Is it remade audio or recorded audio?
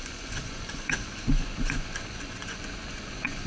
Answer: remade